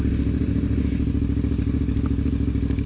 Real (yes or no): yes